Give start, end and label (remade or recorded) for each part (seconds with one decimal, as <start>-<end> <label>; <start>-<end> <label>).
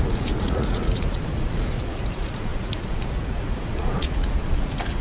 0.0-5.0 remade